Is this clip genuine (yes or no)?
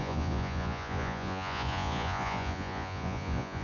no